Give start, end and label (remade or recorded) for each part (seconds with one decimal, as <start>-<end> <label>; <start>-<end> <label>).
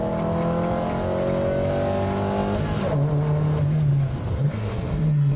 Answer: 0.0-4.3 recorded; 4.3-5.4 remade